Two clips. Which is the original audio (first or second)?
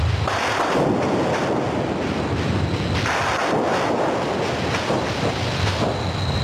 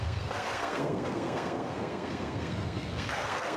first